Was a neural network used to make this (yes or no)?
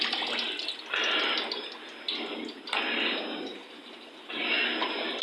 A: no